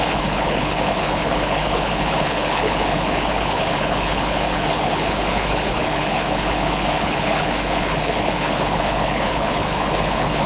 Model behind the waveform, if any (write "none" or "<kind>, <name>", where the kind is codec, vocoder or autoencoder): codec, HILCodec